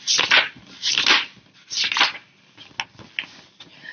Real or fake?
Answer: real